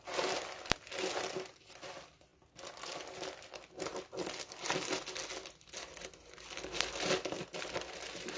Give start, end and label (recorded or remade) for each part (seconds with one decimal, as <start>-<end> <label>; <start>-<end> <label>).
0.0-8.4 recorded